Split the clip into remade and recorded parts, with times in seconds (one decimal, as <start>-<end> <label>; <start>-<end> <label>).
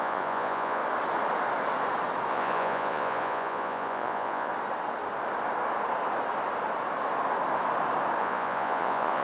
0.0-0.8 remade; 0.8-2.3 recorded; 2.3-4.5 remade; 4.5-8.2 recorded; 8.2-9.2 remade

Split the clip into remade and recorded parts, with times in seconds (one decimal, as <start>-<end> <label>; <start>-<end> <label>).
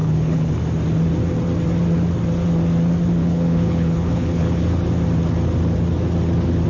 0.0-0.5 remade; 0.5-3.2 recorded; 3.2-4.6 remade; 4.6-6.7 recorded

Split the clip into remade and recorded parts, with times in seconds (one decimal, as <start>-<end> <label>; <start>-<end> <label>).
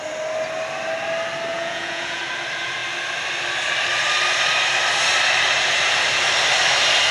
0.0-1.5 recorded; 1.5-2.2 remade; 2.2-7.1 recorded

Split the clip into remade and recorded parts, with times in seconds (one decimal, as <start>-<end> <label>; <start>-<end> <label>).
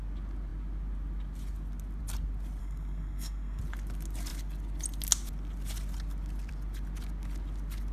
0.0-2.6 recorded; 2.6-3.6 remade; 3.6-7.9 recorded